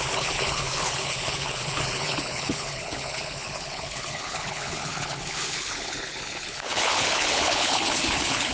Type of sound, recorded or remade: remade